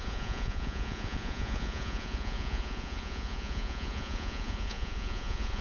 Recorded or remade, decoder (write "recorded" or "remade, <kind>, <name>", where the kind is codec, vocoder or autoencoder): remade, vocoder, Vocos